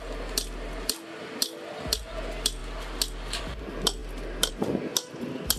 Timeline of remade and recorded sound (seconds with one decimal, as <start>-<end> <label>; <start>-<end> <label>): 0.0-5.6 recorded